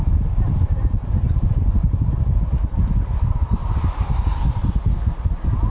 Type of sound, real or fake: real